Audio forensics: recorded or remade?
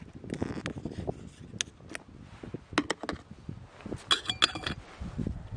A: recorded